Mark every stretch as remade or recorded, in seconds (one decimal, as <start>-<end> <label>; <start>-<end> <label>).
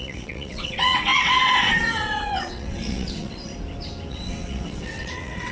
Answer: 0.0-3.5 remade; 3.5-4.1 recorded; 4.1-5.5 remade